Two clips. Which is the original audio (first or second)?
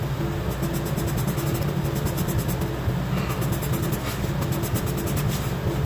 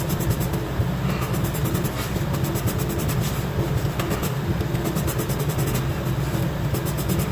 first